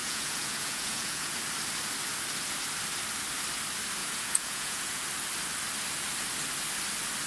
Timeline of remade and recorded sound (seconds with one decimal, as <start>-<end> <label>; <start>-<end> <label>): 0.0-1.4 remade; 1.4-4.0 recorded; 4.0-5.0 remade; 5.0-7.3 recorded